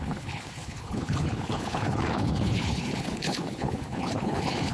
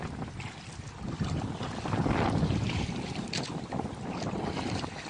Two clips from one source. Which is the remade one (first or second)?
first